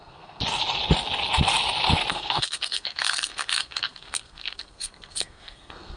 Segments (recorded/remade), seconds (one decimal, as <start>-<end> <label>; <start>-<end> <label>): 0.0-0.4 remade; 0.4-2.1 recorded; 2.1-6.0 remade